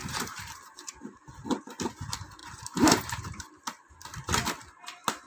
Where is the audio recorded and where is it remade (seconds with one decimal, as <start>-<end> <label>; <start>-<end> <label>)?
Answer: 0.0-0.9 remade; 0.9-2.4 recorded; 2.4-3.6 remade; 3.6-5.3 recorded